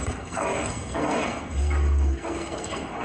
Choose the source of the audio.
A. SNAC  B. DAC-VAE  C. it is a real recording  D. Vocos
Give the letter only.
A